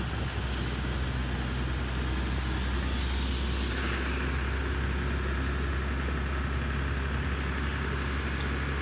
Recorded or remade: recorded